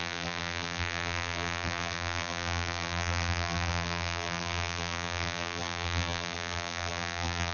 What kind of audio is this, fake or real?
fake